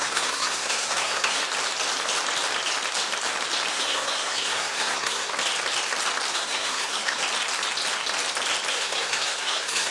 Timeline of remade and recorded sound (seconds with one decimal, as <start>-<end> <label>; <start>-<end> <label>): 0.0-1.4 remade; 1.4-3.7 recorded; 3.7-5.3 remade; 5.3-6.3 recorded; 6.3-7.2 remade; 7.2-8.7 recorded; 8.7-9.9 remade